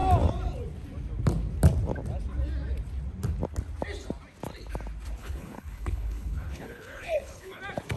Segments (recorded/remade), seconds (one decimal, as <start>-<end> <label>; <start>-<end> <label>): 0.0-5.2 recorded; 5.2-7.6 remade; 7.6-8.0 recorded